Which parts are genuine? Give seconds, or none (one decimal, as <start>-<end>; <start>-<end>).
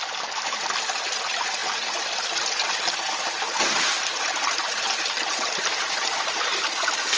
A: 0.0-7.2